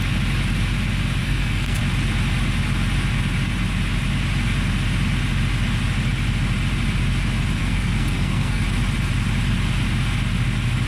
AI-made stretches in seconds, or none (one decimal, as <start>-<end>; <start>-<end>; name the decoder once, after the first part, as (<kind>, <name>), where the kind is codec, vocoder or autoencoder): 1.2-1.8 (codec, SNAC); 7.6-8.6

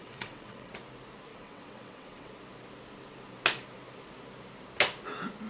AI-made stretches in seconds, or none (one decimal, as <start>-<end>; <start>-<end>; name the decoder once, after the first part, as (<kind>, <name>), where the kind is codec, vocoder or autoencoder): 0.0-0.7 (vocoder, WaveNeXt); 1.3-2.3

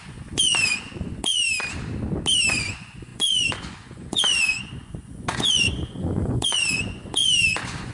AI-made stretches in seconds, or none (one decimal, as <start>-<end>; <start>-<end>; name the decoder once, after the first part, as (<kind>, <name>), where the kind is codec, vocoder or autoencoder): 0.0-1.4 (vocoder, Vocos); 2.5-7.9

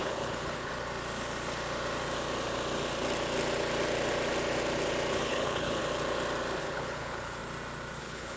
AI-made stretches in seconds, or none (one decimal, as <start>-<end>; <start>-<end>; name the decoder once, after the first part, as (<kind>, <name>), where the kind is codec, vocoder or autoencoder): 0.0-0.7 (codec, HILCodec); 5.1-5.8; 6.6-7.4; 8.0-8.4

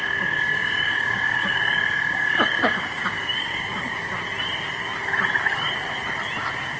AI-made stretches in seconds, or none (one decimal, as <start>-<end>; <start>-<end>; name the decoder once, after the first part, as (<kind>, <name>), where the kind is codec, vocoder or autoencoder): 0.0-4.1 (codec, DAC)

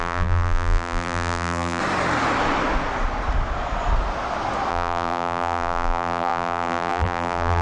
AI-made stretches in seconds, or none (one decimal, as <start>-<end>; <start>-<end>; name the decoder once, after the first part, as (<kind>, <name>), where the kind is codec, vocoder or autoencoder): 0.0-1.8 (vocoder, BigVGAN v2); 4.7-7.6

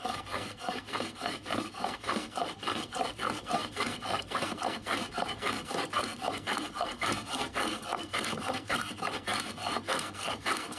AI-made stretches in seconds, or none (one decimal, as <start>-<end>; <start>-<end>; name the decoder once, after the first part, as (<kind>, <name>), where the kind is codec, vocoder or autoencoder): 0.0-10.8 (codec, SNAC)